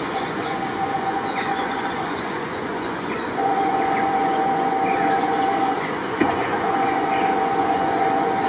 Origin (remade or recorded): remade